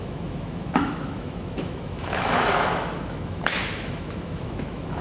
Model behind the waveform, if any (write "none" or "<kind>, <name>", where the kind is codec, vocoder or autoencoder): autoencoder, DAC-VAE